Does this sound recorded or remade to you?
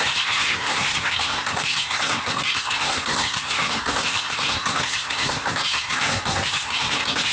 remade